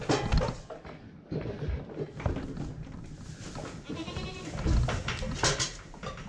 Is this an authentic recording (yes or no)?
yes